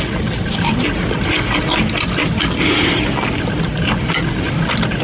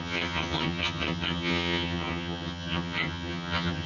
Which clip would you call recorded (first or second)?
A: first